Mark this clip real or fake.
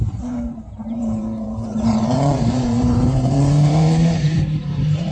fake